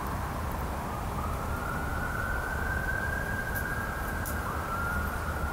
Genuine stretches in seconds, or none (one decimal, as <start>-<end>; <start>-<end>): 0.0-1.9